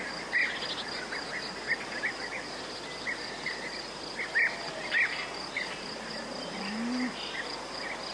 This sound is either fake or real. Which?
real